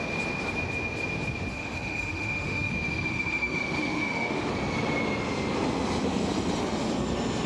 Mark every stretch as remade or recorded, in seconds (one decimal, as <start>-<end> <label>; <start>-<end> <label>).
0.0-1.5 recorded; 1.5-2.7 remade; 2.7-3.1 recorded; 3.1-4.5 remade; 4.5-7.5 recorded